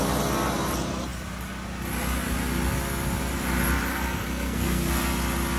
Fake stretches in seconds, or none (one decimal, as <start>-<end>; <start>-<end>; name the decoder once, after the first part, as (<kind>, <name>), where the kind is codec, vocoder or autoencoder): 3.9-4.9 (codec, SNAC)